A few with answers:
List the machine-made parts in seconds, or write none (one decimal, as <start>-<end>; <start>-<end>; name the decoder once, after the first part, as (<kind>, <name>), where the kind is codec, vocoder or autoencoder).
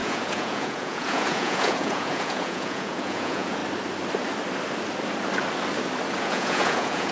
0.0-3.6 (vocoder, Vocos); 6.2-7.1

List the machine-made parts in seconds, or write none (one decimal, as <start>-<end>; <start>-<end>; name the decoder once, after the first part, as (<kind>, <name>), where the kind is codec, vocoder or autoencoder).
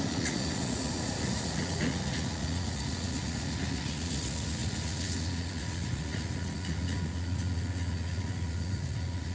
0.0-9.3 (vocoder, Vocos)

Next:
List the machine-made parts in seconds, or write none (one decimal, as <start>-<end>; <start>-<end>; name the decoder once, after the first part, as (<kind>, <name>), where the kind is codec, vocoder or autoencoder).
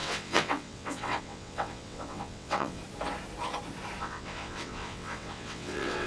0.0-2.8 (vocoder, WaveNeXt); 4.0-6.1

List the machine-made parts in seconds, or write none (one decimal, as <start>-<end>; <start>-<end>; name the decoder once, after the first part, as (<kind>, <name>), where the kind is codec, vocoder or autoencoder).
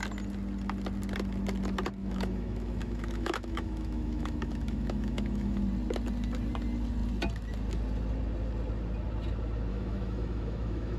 2.0-5.6 (autoencoder, DAC-VAE); 9.7-11.0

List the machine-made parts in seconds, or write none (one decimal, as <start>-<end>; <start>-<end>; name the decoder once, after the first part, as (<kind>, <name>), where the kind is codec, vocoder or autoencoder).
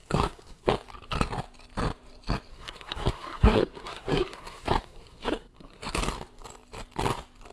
0.0-0.7 (codec, SNAC); 2.5-6.0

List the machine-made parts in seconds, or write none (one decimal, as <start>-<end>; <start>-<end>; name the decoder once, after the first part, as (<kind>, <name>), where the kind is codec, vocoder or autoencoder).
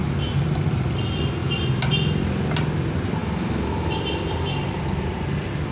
3.2-3.9 (autoencoder, DAC-VAE)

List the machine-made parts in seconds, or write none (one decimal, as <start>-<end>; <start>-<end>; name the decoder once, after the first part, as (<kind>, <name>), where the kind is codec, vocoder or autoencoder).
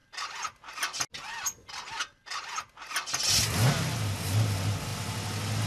none